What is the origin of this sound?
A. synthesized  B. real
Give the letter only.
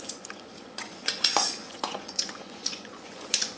A